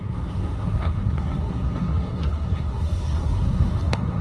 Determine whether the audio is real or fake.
fake